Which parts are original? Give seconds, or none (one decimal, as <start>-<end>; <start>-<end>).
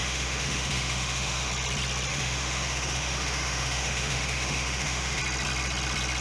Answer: 1.5-2.1; 5.2-6.2